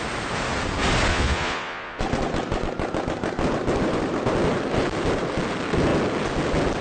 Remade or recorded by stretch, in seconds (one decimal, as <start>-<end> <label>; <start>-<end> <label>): 0.0-1.1 recorded; 1.1-2.0 remade; 2.0-6.8 recorded